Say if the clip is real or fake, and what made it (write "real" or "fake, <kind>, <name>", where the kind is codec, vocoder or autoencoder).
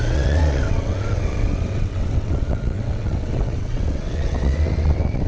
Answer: fake, vocoder, WaveNeXt